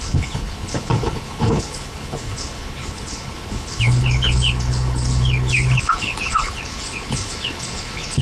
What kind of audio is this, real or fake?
fake